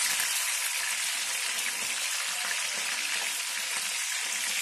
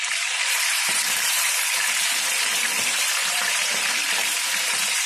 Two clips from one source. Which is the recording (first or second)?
first